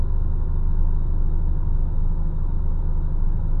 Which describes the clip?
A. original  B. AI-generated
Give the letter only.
A